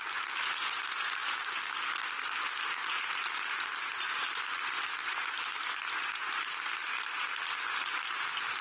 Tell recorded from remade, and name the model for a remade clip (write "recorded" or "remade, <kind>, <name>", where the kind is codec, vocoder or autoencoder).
recorded